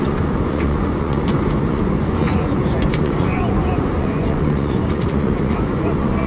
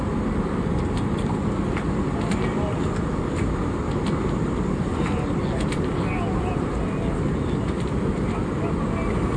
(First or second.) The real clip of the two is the second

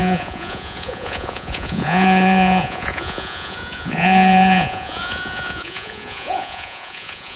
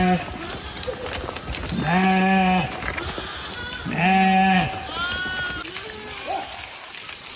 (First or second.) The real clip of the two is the second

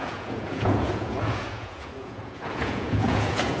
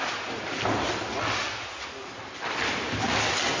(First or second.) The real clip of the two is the second